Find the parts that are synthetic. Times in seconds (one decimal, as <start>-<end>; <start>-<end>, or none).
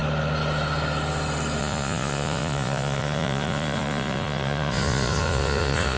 1.6-6.0